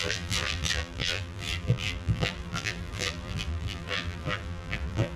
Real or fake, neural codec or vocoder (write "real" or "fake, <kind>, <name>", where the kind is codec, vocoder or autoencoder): fake, vocoder, BigVGAN v2